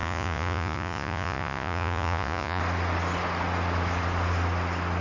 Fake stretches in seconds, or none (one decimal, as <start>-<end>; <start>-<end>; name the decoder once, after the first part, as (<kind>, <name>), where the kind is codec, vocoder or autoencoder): 0.0-2.6 (vocoder, Vocos)